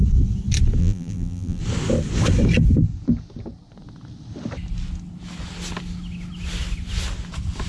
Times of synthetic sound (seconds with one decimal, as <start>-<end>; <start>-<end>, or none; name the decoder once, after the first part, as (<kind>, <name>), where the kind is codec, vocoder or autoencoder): 0.8-1.6 (vocoder, BigVGAN v2)